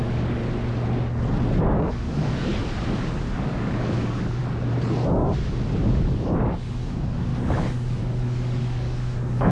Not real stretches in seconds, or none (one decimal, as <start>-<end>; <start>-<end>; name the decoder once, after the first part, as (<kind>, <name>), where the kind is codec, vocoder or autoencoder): 0.0-0.4 (codec, DAC); 1.6-2.5; 3.4-4.4; 5.8-7.3; 8.0-9.5